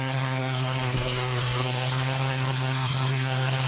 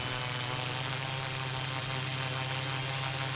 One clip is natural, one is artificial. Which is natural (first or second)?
second